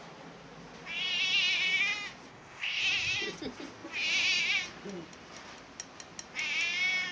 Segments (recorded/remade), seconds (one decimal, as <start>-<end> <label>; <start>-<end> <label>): 0.0-2.3 recorded; 2.3-2.8 remade; 2.8-7.1 recorded